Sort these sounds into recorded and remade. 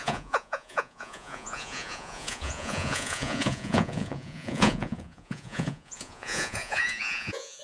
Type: remade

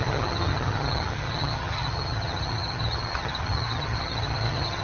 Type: remade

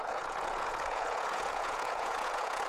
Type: remade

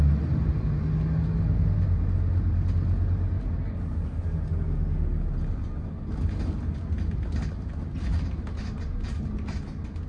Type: recorded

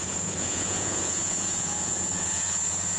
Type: remade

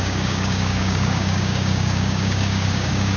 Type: remade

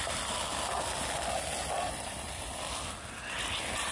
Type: recorded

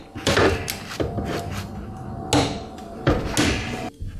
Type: recorded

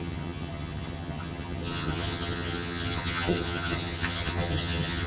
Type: remade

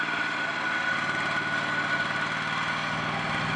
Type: recorded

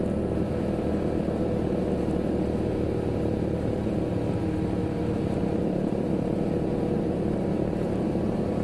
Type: remade